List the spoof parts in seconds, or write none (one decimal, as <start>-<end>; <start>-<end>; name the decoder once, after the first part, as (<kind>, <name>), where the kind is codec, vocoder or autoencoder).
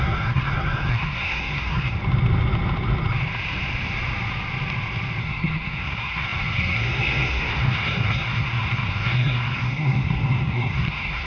0.0-2.0 (codec, SNAC); 5.2-11.3